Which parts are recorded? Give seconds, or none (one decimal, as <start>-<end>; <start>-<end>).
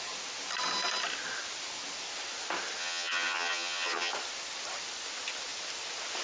0.0-2.8; 4.1-6.2